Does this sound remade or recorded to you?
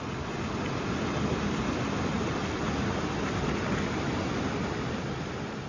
recorded